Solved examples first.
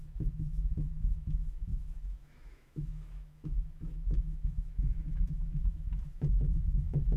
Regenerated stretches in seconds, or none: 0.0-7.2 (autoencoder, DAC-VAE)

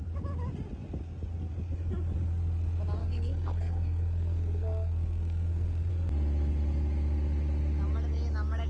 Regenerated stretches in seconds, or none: 3.0-5.9 (codec, SNAC)

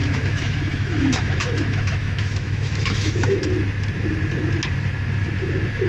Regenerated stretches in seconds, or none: 0.0-3.5 (autoencoder, DAC-VAE)

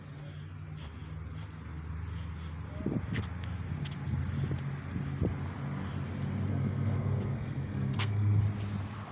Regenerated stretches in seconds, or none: 6.5-8.4 (codec, SNAC)

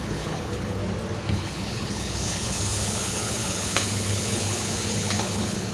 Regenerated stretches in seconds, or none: 0.0-0.8 (codec, HILCodec); 1.3-5.7

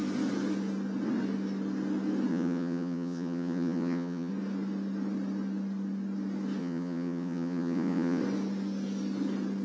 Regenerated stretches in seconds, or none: 2.3-4.3 (vocoder, Vocos); 6.6-8.2

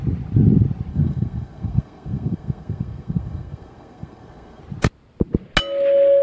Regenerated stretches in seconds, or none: 0.9-4.6 (codec, SNAC)

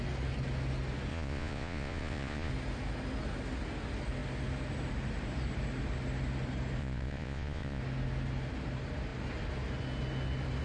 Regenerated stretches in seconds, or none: 1.1-2.5 (vocoder, Vocos); 6.8-7.8